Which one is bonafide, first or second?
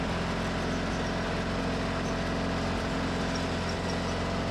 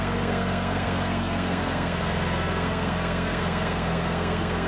first